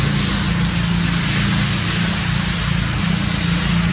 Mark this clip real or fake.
real